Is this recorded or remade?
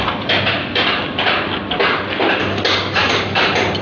recorded